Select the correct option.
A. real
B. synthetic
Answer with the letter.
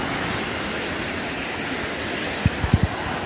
B